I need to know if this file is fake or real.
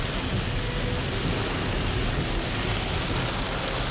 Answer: real